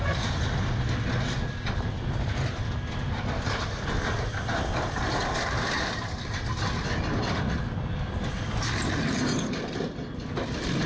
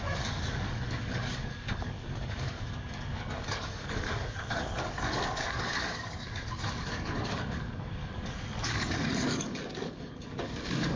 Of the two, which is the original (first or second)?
first